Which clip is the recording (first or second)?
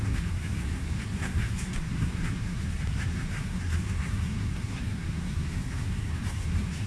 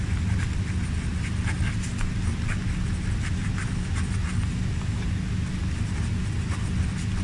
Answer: second